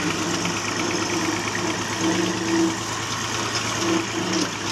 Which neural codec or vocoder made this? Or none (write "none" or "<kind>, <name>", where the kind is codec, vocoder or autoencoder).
none